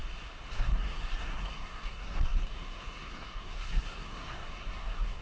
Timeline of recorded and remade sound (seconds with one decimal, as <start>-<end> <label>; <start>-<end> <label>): 0.0-0.5 recorded; 0.5-5.2 remade

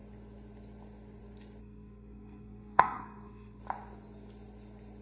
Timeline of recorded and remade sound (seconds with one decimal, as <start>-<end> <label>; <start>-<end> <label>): 0.0-1.6 recorded; 1.6-3.6 remade; 3.6-5.0 recorded

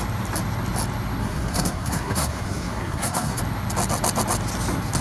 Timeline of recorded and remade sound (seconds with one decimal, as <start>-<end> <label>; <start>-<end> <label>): 0.0-1.2 recorded; 1.2-3.4 remade; 3.4-5.0 recorded

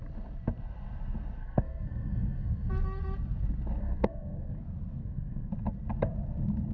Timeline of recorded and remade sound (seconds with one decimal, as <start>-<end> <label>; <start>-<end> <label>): 0.0-1.4 recorded; 1.4-2.7 remade; 2.7-3.8 recorded; 3.8-4.6 remade; 4.6-5.0 recorded; 5.0-5.5 remade; 5.5-6.7 recorded

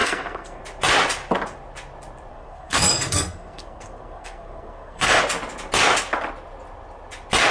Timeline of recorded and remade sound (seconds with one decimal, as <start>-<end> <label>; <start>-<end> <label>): 0.0-0.6 remade; 0.6-2.3 recorded; 2.3-5.2 remade; 5.2-7.5 recorded

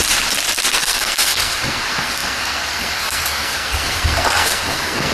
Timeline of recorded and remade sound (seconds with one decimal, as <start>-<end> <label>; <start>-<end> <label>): 0.0-0.7 recorded; 0.7-5.1 remade

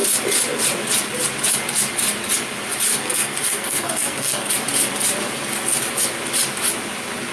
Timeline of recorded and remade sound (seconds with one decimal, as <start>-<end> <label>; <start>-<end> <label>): 0.0-2.9 recorded; 2.9-4.5 remade; 4.5-7.3 recorded